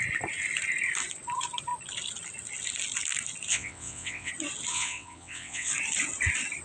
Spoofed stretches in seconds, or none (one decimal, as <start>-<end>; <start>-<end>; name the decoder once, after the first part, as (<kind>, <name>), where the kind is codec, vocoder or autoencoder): 3.5-4.3 (vocoder, WaveNeXt); 4.7-5.7